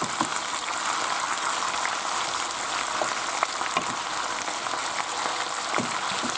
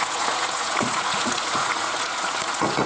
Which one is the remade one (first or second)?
second